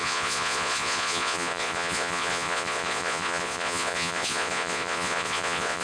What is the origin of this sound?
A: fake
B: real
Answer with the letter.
A